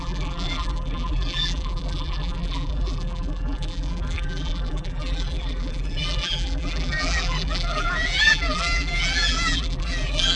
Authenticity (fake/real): fake